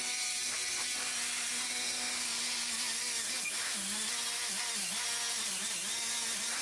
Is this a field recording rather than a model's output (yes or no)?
yes